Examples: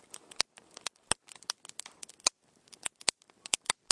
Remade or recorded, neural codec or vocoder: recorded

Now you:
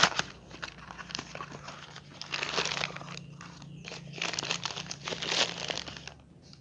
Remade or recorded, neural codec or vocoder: recorded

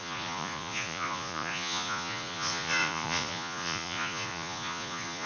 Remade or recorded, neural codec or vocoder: remade, vocoder, Vocos